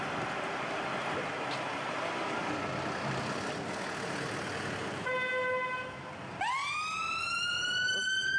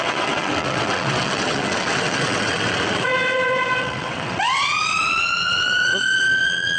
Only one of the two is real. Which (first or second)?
first